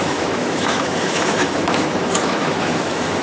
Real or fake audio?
fake